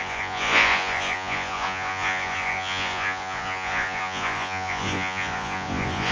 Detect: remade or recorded remade